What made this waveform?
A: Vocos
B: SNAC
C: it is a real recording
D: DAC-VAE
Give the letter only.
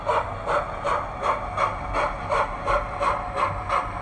C